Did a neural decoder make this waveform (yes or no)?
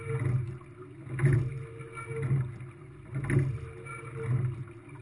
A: no